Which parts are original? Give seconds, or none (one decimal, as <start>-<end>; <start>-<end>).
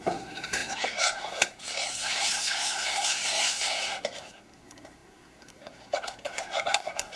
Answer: none